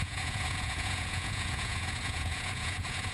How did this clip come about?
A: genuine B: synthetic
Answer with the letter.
B